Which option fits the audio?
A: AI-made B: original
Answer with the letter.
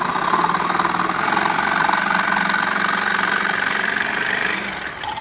B